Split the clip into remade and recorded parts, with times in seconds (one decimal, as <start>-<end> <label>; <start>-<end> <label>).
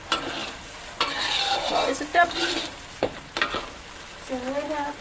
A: 0.0-5.0 recorded